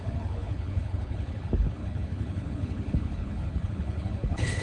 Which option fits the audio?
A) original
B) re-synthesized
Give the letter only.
B